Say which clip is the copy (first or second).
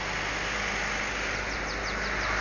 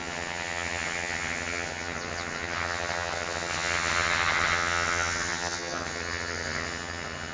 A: second